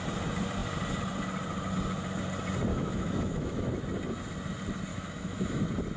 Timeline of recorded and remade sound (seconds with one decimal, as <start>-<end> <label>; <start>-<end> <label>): 0.0-2.7 recorded; 2.7-3.7 remade; 3.7-4.9 recorded; 4.9-5.6 remade; 5.6-6.0 recorded